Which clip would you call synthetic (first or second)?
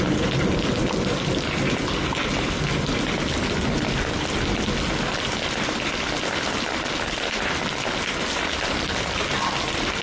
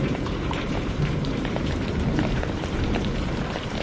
second